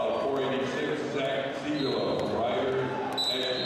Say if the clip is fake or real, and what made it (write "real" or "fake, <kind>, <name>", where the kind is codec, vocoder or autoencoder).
real